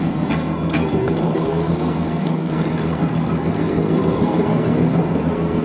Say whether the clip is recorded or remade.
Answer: remade